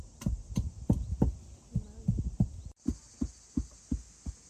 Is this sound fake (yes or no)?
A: no